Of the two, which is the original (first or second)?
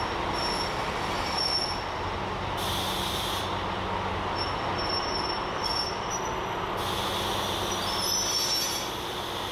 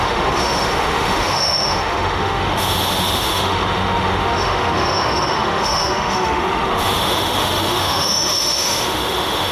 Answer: first